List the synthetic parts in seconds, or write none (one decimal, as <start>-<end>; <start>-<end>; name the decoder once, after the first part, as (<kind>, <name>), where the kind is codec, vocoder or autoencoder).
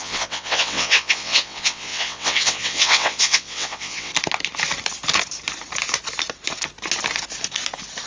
0.0-4.1 (vocoder, WaveNeXt)